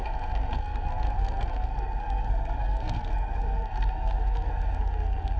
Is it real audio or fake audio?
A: fake